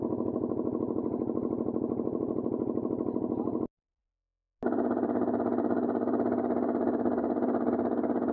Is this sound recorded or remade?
recorded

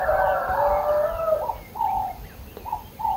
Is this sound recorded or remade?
recorded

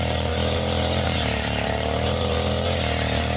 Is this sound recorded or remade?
remade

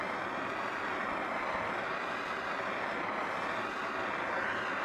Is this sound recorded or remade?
remade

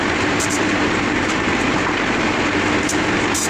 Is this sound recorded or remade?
remade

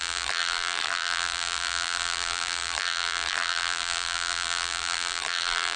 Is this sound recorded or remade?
remade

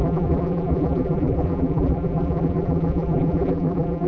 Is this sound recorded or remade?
remade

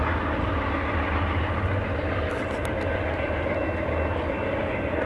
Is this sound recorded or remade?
recorded